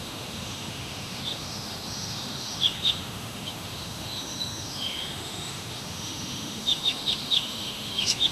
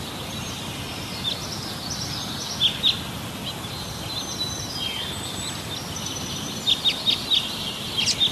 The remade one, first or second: first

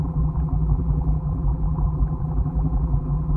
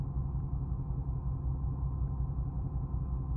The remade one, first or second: first